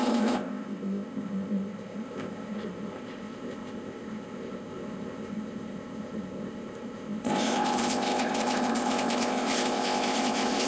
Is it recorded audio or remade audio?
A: remade